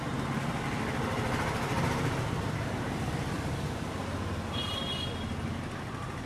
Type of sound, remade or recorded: remade